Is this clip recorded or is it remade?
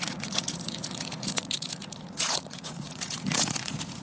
remade